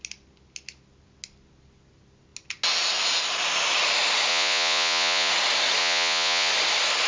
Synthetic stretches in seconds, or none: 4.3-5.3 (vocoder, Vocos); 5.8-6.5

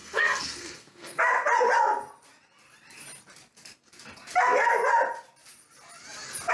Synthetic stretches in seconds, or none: 0.0-1.2 (codec, SNAC)

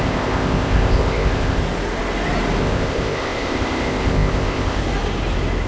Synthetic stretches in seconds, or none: 0.0-1.6 (codec, ZipCodec); 2.6-4.8